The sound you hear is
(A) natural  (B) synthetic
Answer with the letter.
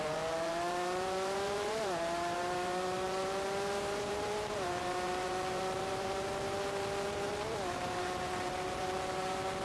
B